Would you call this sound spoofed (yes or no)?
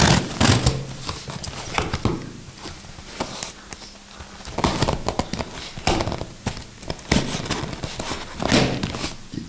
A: no